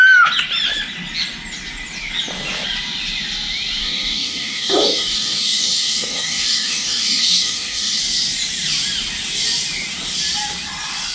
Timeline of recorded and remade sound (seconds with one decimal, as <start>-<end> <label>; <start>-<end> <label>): 0.0-3.8 recorded; 3.8-8.0 remade; 8.0-11.1 recorded

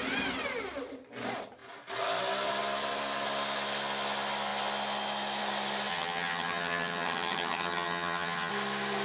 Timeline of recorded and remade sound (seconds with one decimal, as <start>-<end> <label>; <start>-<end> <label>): 0.0-5.9 recorded; 5.9-8.5 remade; 8.5-9.0 recorded

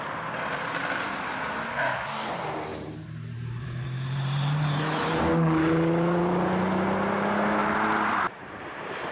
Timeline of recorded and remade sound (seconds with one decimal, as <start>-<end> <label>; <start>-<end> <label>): 0.0-2.7 recorded; 2.7-5.2 remade; 5.2-7.6 recorded; 7.6-9.1 remade